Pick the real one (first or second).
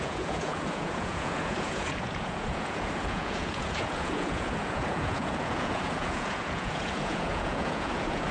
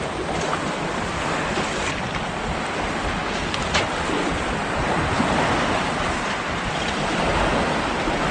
second